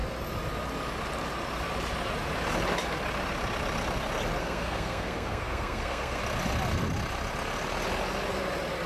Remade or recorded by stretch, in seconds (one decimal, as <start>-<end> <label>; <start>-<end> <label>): 0.0-4.4 recorded; 4.4-6.2 remade; 6.2-8.9 recorded